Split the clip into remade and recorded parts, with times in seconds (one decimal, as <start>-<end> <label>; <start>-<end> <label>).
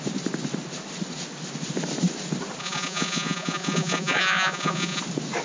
0.0-2.6 recorded; 2.6-5.0 remade; 5.0-5.4 recorded